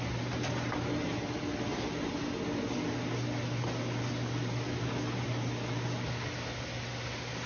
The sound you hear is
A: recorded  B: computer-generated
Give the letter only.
A